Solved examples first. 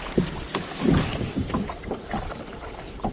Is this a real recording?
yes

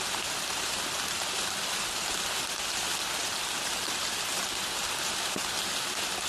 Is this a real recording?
yes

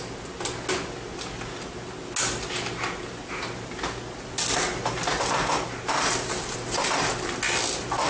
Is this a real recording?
yes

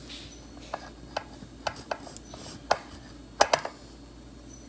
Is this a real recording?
yes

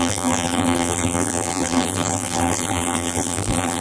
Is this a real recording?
no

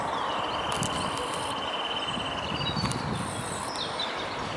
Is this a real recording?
yes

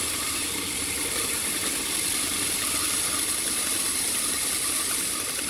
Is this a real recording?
no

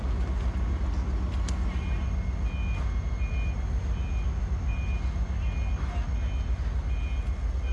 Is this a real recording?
yes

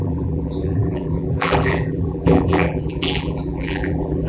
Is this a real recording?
no